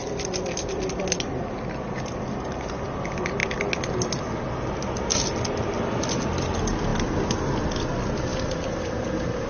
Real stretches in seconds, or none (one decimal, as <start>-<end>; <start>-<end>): 0.0-9.5